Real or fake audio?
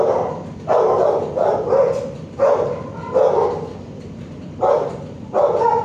fake